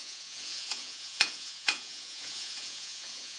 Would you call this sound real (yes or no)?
no